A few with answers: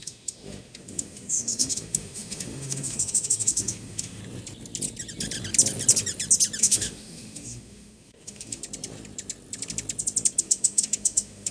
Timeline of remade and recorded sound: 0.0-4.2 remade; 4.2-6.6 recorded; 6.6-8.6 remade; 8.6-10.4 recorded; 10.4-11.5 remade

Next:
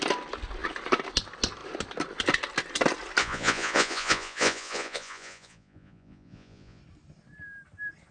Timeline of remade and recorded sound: 0.0-3.2 recorded; 3.2-6.8 remade; 6.8-8.1 recorded

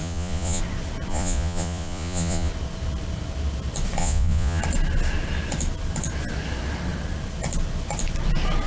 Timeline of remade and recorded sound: 0.0-0.6 remade; 0.6-1.1 recorded; 1.1-2.5 remade; 2.5-4.0 recorded; 4.0-4.6 remade; 4.6-8.7 recorded

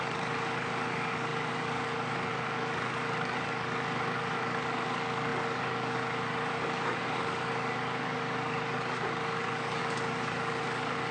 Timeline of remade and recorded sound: 0.0-11.1 remade

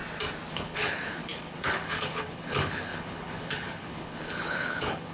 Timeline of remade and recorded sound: 0.0-0.5 recorded; 0.5-5.1 remade

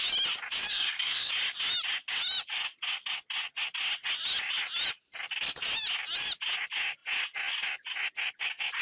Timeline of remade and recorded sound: 0.0-0.7 recorded; 0.7-1.3 remade; 1.3-8.8 recorded

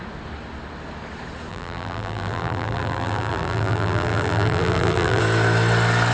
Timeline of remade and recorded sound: 0.0-1.5 recorded; 1.5-5.2 remade; 5.2-6.1 recorded